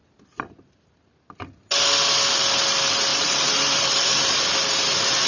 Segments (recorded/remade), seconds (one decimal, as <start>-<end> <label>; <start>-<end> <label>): 0.0-3.1 recorded; 3.1-4.2 remade; 4.2-5.3 recorded